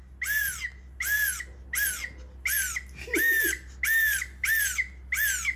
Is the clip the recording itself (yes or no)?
yes